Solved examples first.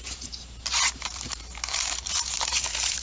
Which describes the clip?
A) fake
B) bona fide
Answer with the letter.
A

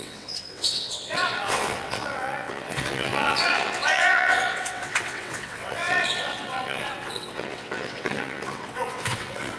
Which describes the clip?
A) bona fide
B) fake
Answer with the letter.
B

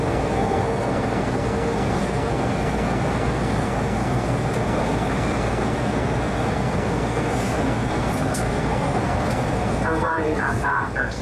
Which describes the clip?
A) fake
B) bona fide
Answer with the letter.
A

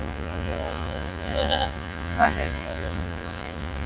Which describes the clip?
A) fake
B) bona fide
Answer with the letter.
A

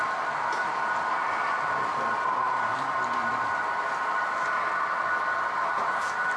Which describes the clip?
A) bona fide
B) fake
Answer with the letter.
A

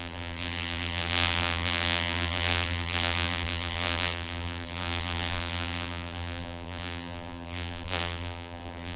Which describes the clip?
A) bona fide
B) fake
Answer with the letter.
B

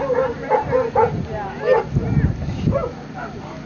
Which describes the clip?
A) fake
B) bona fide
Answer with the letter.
B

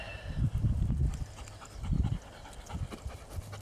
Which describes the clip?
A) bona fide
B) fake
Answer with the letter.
A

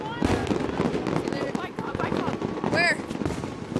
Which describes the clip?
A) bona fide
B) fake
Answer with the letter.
A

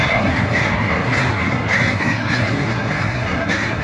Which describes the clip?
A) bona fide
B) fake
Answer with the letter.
B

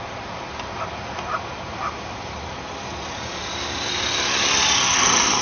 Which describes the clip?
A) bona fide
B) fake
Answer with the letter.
A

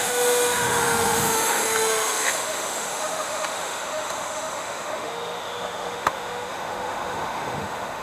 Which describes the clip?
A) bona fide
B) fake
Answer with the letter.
B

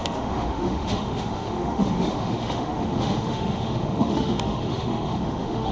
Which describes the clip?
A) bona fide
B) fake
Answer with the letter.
B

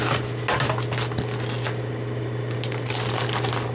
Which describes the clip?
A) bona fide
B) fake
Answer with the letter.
A